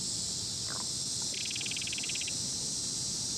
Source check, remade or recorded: recorded